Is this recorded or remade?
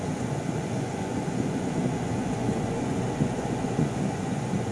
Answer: remade